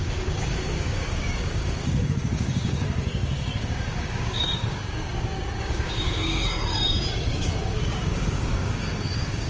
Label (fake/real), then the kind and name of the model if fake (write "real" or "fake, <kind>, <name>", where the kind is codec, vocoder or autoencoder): fake, codec, DAC